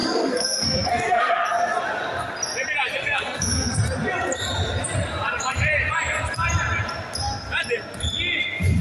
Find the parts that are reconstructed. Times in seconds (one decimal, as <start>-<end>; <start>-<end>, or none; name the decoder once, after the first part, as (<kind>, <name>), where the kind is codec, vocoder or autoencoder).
0.0-1.3 (codec, SNAC); 3.0-3.8